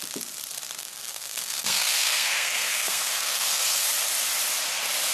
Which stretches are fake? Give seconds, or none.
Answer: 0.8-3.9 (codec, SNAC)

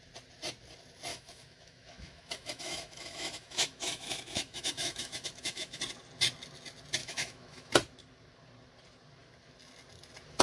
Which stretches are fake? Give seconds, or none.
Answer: 1.1-5.8 (autoencoder, DAC-VAE); 7.0-7.7

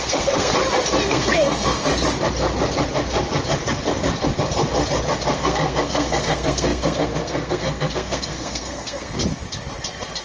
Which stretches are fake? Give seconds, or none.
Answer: 0.0-0.5 (codec, SNAC); 1.1-1.9; 5.3-9.2

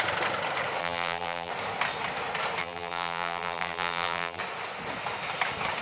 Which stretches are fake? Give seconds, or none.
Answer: 0.8-1.5 (vocoder, BigVGAN v2); 2.6-4.4

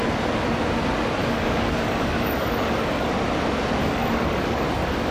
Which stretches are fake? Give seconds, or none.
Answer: 1.2-3.1 (codec, DAC); 3.8-5.1